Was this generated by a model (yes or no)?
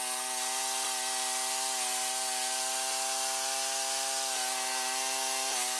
no